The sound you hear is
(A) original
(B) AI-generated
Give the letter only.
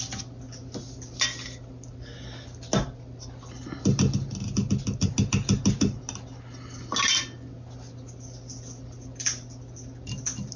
A